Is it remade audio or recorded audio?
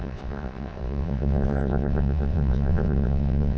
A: remade